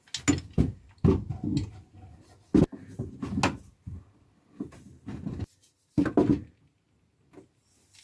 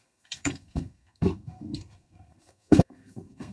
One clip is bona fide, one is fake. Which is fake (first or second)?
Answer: second